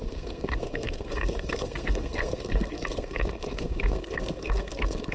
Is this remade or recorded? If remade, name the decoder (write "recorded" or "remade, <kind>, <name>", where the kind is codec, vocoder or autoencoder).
remade, codec, SNAC